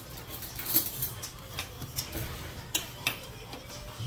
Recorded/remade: recorded